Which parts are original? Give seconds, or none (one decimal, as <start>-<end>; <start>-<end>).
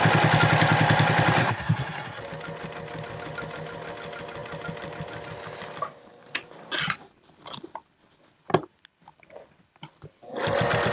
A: 0.0-1.4; 2.2-10.9